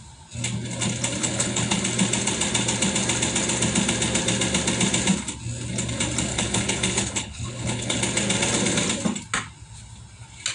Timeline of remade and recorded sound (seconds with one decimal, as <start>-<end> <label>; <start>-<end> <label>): 0.0-1.2 recorded; 1.2-1.8 remade; 1.8-6.3 recorded; 6.3-8.0 remade; 8.0-10.5 recorded